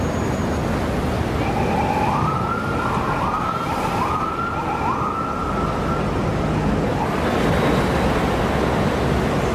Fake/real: real